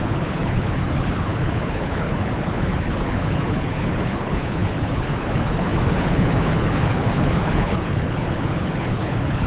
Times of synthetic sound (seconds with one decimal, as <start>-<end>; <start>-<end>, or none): 0.0-9.5